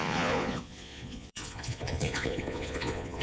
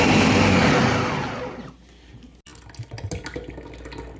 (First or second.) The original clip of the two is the second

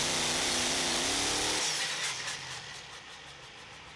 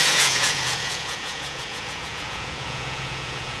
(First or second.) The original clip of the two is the first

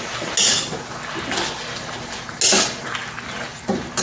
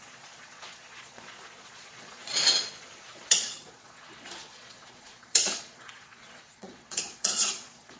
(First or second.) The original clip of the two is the first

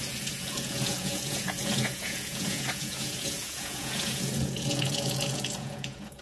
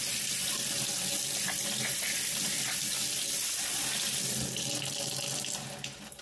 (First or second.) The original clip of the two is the second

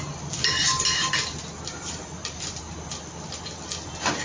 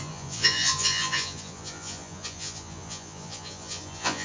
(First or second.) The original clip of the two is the first